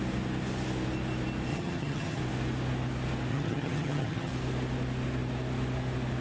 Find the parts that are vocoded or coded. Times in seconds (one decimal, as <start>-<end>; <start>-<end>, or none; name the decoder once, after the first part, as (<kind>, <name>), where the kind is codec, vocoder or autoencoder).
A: 1.5-2.2 (vocoder, HiFi-GAN); 3.3-4.3